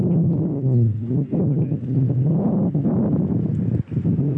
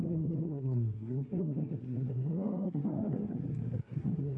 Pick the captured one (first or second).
first